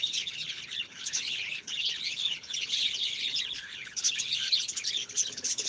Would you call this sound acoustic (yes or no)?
no